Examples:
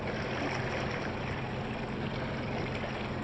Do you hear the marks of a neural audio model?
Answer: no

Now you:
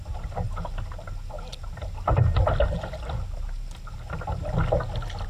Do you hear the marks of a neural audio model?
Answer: no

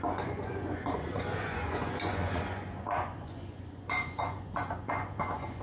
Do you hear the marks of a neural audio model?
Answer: yes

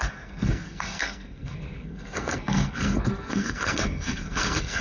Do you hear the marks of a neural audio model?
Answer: yes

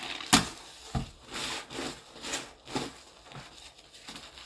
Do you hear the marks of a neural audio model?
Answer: no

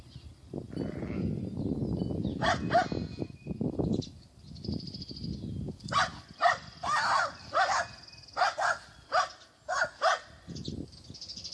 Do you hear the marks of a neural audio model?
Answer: no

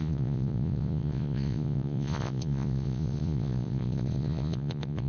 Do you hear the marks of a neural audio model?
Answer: yes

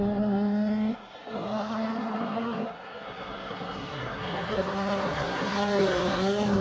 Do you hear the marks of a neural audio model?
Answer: yes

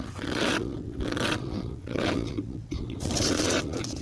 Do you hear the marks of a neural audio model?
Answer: yes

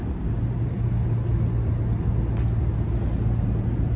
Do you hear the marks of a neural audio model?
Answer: no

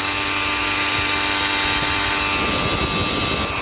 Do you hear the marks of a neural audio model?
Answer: no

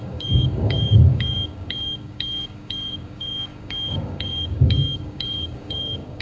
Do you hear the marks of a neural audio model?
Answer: yes